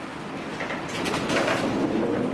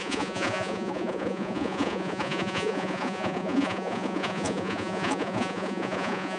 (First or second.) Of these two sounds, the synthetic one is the second